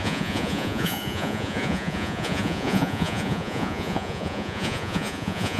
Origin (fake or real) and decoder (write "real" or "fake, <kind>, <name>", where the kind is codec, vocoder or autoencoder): fake, vocoder, Vocos